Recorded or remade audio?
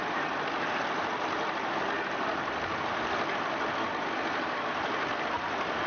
recorded